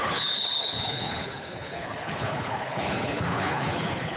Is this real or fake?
fake